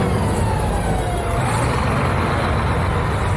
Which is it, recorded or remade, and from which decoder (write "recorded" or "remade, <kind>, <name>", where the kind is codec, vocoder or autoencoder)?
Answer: recorded